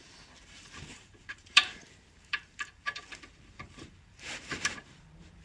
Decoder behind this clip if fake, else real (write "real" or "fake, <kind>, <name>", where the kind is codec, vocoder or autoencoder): fake, vocoder, BigVGAN v2